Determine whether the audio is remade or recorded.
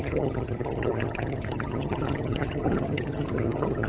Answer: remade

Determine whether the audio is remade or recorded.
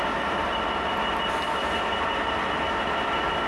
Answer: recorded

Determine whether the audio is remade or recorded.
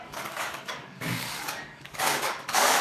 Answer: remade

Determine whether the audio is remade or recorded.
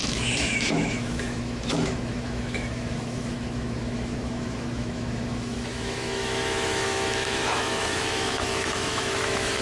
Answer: remade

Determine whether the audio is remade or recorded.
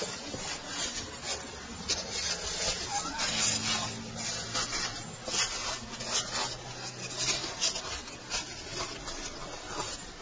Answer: recorded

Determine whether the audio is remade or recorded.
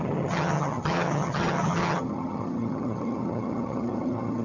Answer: remade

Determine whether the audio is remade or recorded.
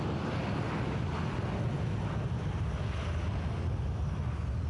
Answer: recorded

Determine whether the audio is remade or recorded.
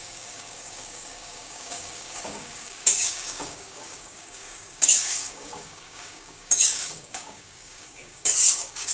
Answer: remade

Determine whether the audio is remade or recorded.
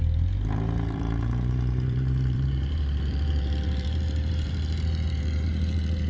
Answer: remade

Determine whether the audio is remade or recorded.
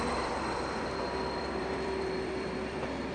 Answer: remade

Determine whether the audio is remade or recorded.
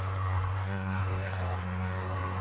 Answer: remade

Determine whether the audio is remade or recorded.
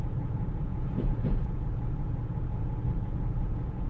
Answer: remade